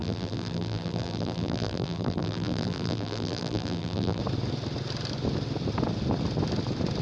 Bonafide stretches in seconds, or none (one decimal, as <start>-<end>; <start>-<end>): 4.2-7.0